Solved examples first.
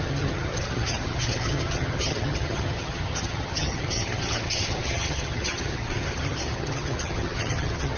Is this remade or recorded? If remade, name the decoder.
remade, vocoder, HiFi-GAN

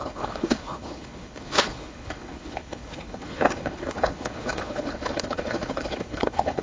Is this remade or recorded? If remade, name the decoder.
remade, codec, HILCodec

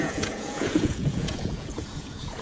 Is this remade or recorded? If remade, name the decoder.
remade, vocoder, Vocos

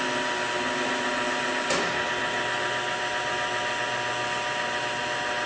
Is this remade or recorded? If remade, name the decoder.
recorded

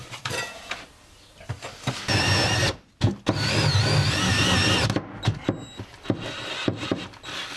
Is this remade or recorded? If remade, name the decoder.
recorded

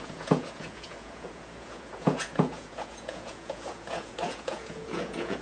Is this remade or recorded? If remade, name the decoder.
remade, vocoder, Vocos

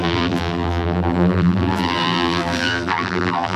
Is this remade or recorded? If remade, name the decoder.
remade, vocoder, BigVGAN v2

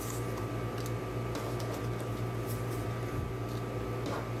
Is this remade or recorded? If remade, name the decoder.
recorded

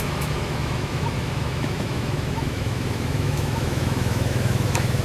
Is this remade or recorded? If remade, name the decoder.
remade, autoencoder, DAC-VAE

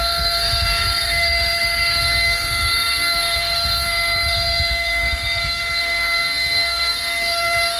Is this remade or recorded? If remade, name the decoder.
remade, codec, SNAC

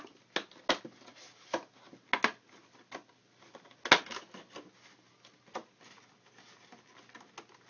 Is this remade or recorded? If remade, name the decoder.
recorded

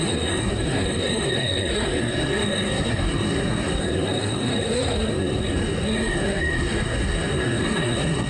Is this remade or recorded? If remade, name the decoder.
remade, codec, SNAC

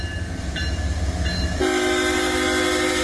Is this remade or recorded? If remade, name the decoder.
recorded